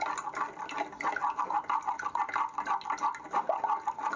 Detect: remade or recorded recorded